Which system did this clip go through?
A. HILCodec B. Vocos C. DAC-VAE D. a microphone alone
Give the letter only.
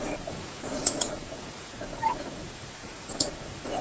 B